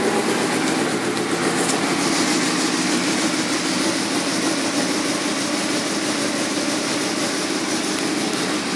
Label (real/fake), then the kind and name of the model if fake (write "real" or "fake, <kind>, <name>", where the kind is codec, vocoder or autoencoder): real